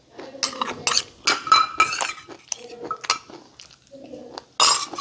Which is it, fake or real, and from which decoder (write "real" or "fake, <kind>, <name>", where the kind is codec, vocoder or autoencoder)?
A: real